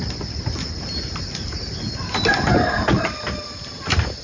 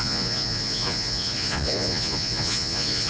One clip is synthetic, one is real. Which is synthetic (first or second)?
second